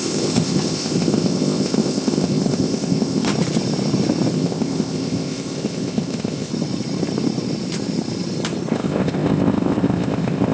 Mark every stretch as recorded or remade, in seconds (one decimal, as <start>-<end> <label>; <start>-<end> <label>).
0.0-3.3 remade; 3.3-4.3 recorded; 4.3-6.5 remade; 6.5-8.7 recorded; 8.7-10.5 remade